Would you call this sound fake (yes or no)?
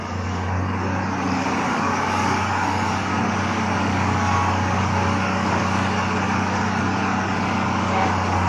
yes